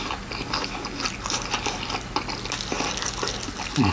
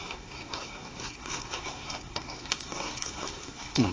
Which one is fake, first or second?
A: second